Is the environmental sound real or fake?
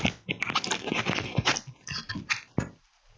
real